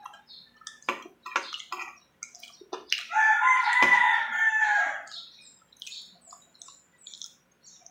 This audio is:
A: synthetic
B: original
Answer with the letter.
B